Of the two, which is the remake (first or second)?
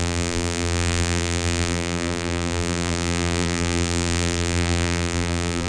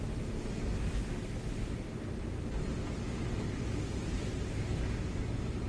first